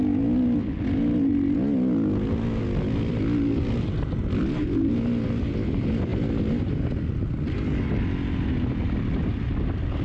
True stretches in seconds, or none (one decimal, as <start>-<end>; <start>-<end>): 0.0-4.4; 4.9-10.0